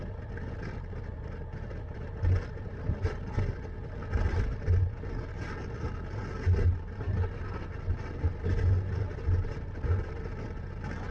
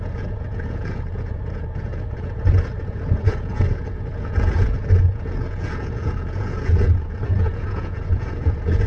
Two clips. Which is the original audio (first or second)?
first